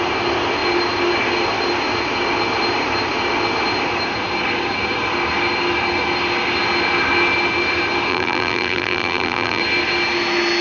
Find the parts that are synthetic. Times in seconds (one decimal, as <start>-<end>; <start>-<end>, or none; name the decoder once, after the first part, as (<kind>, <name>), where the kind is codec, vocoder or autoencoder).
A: 8.1-9.6 (vocoder, BigVGAN v2)